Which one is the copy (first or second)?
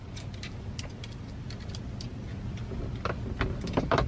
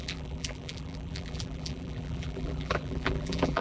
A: second